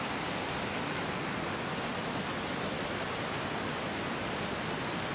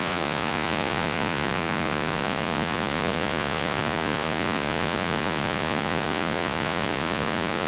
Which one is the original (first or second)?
first